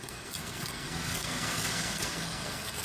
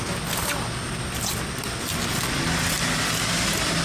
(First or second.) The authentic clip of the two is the second